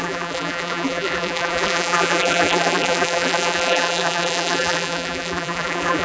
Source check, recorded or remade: remade